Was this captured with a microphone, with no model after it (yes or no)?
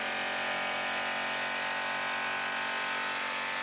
yes